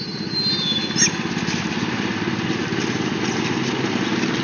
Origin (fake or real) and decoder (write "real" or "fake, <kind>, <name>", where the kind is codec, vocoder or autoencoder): real